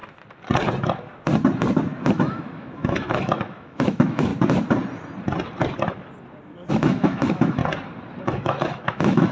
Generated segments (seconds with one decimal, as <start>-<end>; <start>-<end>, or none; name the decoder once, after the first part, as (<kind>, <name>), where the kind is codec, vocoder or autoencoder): 2.1-4.3 (autoencoder, DAC-VAE); 6.7-7.6; 8.2-9.3